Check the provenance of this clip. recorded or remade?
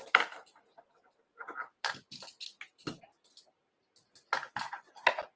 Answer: recorded